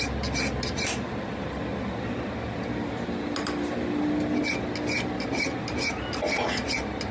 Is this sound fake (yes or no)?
no